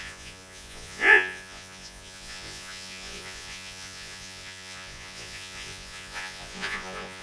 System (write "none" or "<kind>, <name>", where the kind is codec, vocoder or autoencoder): vocoder, Vocos